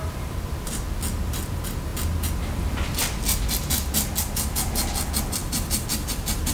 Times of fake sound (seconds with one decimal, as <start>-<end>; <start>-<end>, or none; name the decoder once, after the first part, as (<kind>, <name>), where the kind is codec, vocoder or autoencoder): none

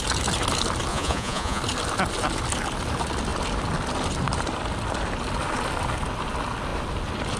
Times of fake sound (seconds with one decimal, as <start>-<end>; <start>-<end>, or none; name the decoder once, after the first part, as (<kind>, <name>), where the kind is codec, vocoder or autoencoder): 0.9-1.6 (vocoder, Vocos)

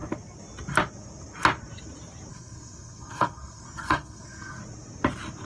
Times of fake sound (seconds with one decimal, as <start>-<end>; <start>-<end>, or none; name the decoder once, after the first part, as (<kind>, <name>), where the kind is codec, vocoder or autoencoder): 2.3-4.6 (codec, SNAC)

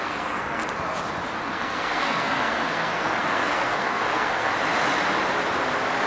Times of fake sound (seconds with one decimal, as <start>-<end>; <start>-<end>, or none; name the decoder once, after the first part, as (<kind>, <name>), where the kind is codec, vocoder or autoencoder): 0.0-0.6 (codec, SNAC); 1.4-4.5

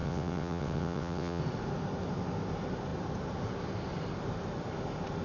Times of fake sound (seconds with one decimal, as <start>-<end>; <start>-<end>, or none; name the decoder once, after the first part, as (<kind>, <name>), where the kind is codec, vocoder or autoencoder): 0.0-1.4 (vocoder, WaveNeXt)

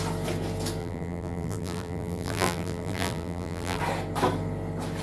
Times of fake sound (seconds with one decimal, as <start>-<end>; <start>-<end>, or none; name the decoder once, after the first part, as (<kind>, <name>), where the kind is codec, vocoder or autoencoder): 0.8-3.8 (vocoder, BigVGAN v2)

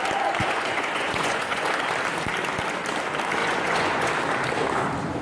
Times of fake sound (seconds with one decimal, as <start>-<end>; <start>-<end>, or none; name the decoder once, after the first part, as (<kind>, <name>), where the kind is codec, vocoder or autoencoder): 0.4-1.9 (vocoder, Vocos); 3.4-4.1

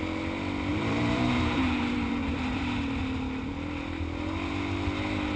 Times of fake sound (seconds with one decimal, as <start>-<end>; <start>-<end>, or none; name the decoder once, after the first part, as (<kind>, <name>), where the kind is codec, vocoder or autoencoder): 0.7-2.6 (vocoder, BigVGAN v2)